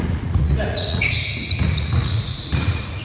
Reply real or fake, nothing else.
fake